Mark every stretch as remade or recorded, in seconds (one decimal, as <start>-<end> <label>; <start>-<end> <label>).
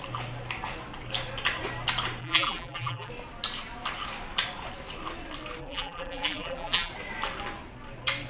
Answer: 0.0-2.2 recorded; 2.2-3.1 remade; 3.1-5.6 recorded; 5.6-6.9 remade; 6.9-8.3 recorded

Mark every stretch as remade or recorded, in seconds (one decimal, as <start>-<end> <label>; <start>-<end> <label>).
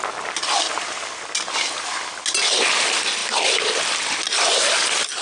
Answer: 0.0-5.2 recorded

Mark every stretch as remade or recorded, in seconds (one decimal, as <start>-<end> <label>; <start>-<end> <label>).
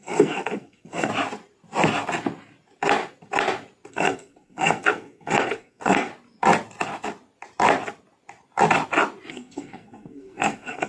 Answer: 0.0-1.1 remade; 1.1-3.9 recorded; 3.9-6.1 remade; 6.1-9.3 recorded; 9.3-10.9 remade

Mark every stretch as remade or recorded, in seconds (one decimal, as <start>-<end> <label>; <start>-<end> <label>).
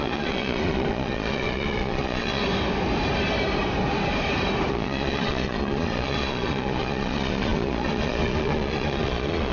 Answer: 0.0-2.4 remade; 2.4-4.7 recorded; 4.7-9.5 remade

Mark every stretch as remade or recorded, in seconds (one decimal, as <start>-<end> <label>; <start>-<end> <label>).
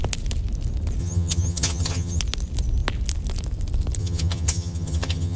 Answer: 0.0-1.0 recorded; 1.0-2.2 remade; 2.2-4.0 recorded; 4.0-5.4 remade